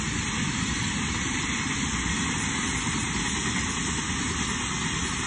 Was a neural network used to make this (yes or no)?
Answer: no